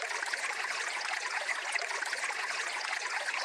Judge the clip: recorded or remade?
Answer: remade